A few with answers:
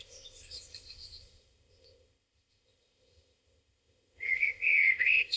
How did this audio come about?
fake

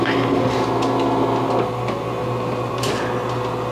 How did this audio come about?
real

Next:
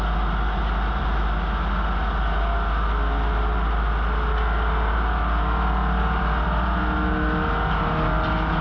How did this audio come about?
real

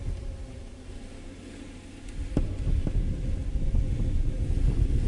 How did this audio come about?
real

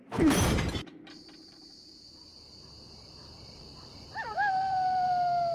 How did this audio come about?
fake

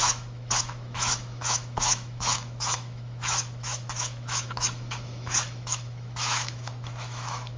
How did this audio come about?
fake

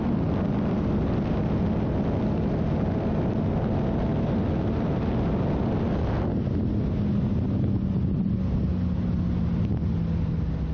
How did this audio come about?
real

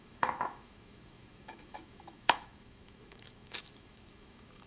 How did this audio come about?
fake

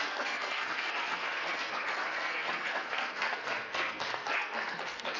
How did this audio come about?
fake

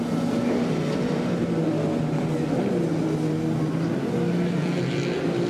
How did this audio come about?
real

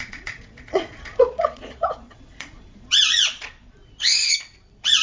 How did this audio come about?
fake